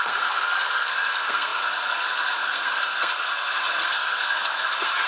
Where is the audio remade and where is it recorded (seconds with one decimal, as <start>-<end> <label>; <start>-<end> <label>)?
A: 0.0-5.1 remade